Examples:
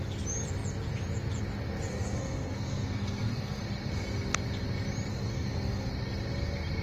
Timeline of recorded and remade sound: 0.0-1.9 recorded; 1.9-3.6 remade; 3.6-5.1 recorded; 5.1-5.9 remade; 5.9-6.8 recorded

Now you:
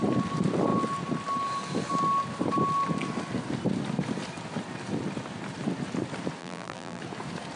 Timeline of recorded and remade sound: 0.0-6.4 recorded; 6.4-7.0 remade; 7.0-7.6 recorded

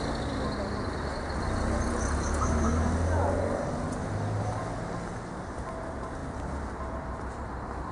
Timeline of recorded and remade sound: 0.0-7.9 recorded

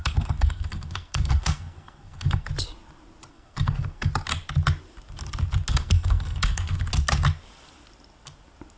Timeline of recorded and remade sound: 0.0-2.5 remade; 2.5-3.3 recorded; 3.3-4.1 remade; 4.1-5.7 recorded; 5.7-6.8 remade; 6.8-8.8 recorded

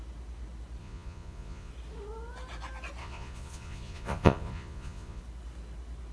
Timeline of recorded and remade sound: 0.0-0.8 recorded; 0.8-1.7 remade; 1.7-3.0 recorded; 3.0-5.2 remade; 5.2-6.1 recorded

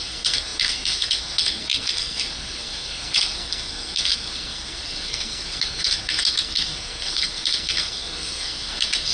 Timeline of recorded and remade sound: 0.0-9.1 remade

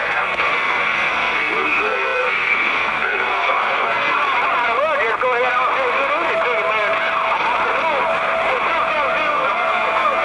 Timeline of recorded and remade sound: 0.0-4.2 remade; 4.2-9.3 recorded; 9.3-10.2 remade

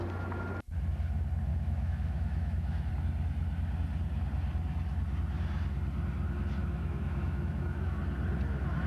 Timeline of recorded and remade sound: 0.0-1.5 recorded; 1.5-2.9 remade; 2.9-6.6 recorded; 6.6-8.0 remade; 8.0-8.9 recorded